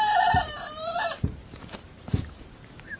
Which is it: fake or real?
fake